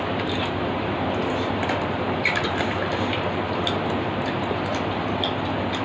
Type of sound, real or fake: fake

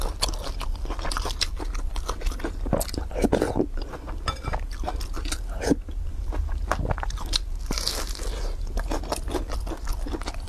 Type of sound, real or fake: real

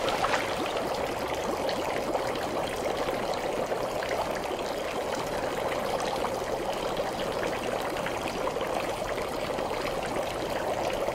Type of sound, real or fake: real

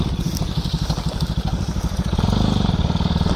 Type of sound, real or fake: real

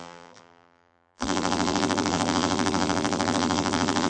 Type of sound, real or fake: fake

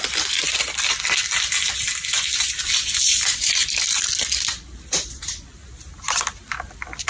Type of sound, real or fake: fake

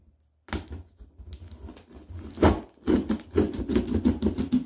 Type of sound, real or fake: real